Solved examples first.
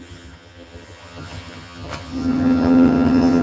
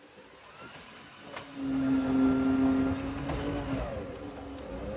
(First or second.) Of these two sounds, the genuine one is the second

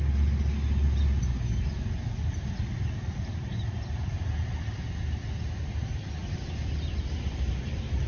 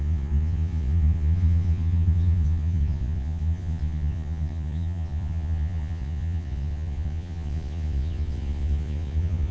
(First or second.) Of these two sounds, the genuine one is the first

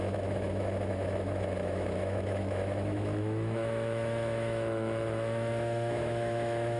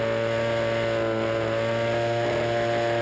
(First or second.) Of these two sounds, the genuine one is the second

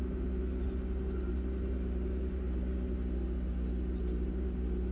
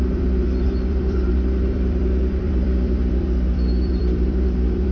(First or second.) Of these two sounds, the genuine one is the first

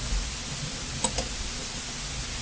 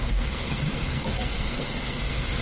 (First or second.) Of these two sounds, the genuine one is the first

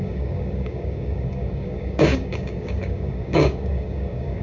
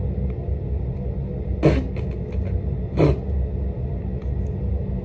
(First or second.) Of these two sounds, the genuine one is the second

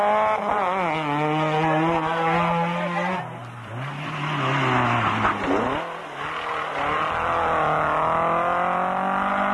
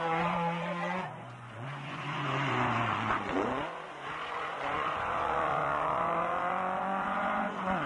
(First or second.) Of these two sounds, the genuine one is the first